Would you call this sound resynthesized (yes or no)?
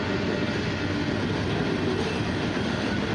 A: no